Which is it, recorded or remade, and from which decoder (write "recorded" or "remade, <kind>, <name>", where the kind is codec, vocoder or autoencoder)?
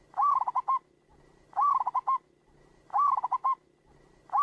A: recorded